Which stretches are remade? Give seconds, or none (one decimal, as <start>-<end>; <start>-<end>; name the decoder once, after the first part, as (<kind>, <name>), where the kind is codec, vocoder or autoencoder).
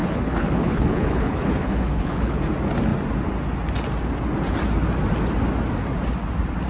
0.0-2.4 (codec, HILCodec)